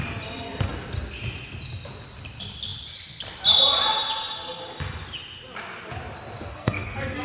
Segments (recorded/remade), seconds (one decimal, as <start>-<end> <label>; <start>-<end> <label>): 0.0-6.5 recorded; 6.5-7.2 remade